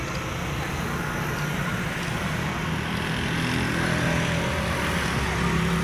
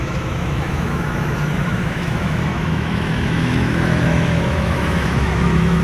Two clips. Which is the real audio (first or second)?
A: first